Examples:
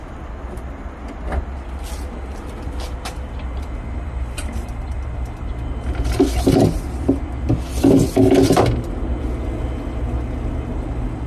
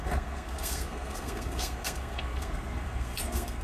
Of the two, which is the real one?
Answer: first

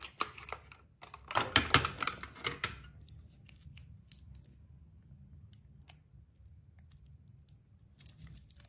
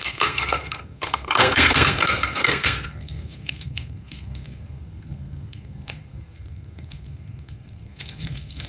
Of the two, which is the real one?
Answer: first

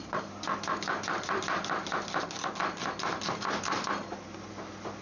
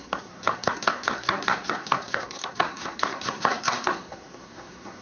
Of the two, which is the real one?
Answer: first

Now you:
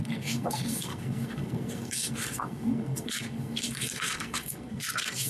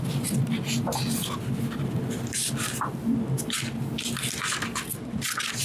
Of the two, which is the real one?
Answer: second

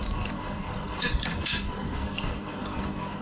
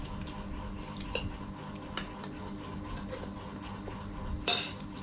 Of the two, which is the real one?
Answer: second